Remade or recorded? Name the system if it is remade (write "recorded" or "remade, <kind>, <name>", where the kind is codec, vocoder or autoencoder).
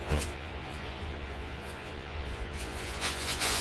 remade, vocoder, Vocos